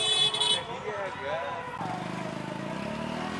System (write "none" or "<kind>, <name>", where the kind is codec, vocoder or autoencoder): none